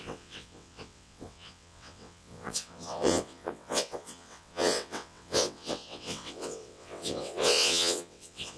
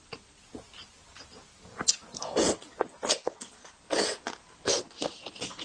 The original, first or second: second